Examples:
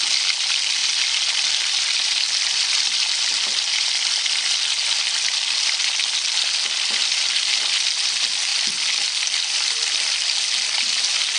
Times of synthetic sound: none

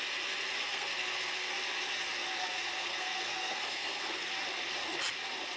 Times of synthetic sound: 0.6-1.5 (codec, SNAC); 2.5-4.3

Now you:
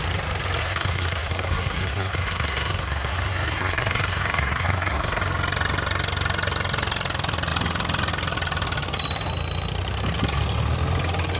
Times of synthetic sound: 0.6-5.2 (codec, SNAC)

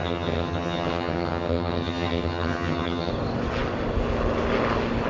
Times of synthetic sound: 0.0-3.1 (vocoder, HiFi-GAN)